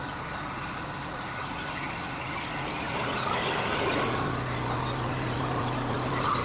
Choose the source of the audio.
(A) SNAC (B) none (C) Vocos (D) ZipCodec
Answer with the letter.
B